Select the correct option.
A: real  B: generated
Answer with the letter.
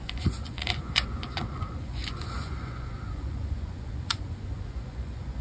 B